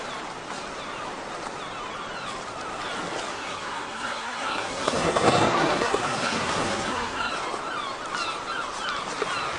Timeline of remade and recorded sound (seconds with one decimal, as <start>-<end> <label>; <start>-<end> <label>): 0.0-3.3 recorded; 3.3-7.3 remade; 7.3-9.6 recorded